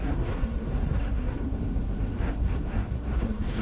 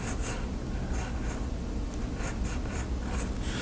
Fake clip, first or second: first